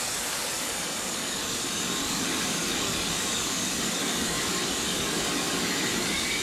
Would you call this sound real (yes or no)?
no